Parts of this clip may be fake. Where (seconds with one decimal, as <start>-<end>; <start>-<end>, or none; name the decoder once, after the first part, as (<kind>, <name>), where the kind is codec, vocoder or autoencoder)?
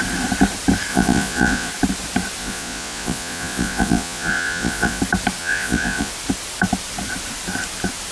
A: 0.9-1.7 (vocoder, Vocos); 2.4-5.0; 5.4-6.1